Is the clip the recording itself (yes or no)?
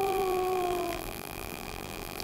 no